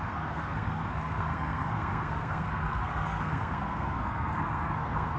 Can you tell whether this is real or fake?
fake